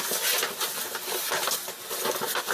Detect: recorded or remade recorded